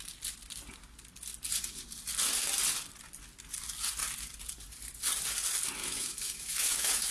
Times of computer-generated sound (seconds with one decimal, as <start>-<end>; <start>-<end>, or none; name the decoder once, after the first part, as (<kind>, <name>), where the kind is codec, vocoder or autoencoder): 5.8-7.1 (autoencoder, DAC-VAE)